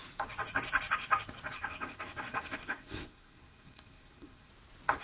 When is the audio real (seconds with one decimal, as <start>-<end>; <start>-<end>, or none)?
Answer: 0.0-1.5; 4.5-5.0